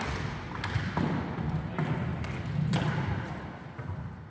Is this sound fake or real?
real